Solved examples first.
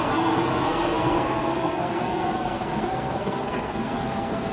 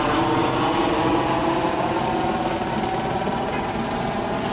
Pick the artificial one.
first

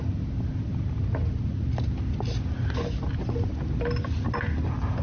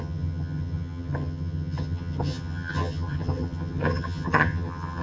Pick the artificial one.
second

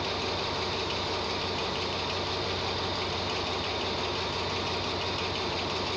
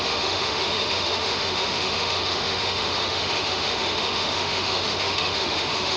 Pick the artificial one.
second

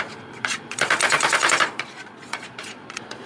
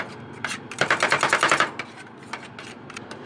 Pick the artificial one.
first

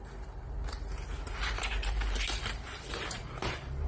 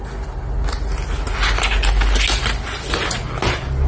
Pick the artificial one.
first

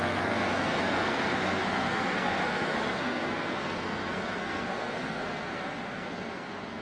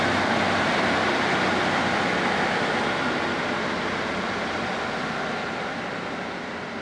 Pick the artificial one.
first